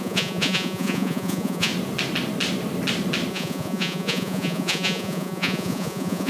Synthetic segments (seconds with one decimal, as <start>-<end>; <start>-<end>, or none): 0.0-1.7; 3.3-6.3